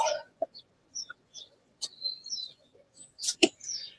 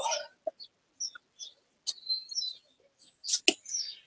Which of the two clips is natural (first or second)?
second